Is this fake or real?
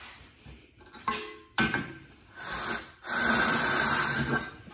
real